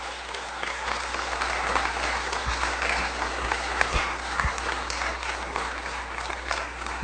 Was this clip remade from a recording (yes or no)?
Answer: yes